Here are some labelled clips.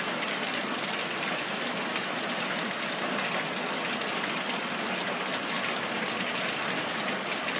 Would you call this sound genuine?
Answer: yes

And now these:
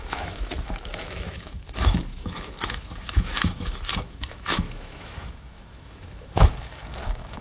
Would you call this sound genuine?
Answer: no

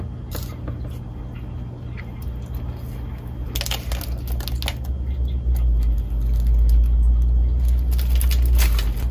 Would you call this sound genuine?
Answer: yes